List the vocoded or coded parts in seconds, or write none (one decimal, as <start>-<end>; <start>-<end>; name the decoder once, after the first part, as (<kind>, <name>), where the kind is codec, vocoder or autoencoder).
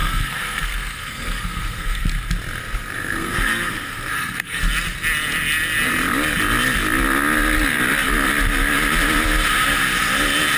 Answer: 0.0-2.1 (codec, SNAC); 2.6-4.6